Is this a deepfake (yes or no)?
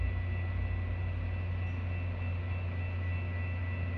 no